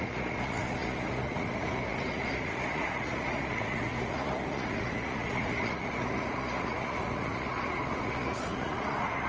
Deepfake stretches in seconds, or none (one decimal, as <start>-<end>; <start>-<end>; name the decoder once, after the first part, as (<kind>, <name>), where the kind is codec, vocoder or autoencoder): 0.0-9.3 (vocoder, Vocos)